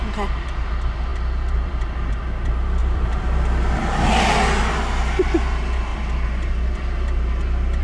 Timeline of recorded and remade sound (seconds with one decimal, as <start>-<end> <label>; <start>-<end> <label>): 0.0-2.8 recorded; 2.8-3.7 remade; 3.7-7.8 recorded